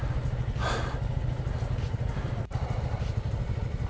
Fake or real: real